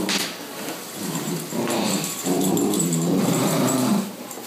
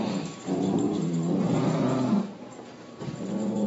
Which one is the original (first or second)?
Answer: second